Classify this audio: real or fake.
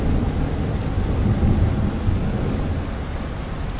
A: real